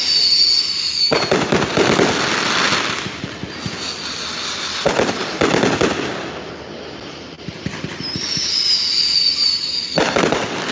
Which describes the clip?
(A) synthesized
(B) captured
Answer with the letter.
B